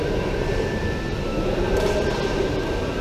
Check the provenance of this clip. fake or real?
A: fake